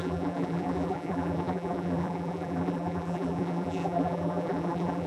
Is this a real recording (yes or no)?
no